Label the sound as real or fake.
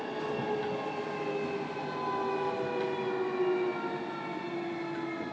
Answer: real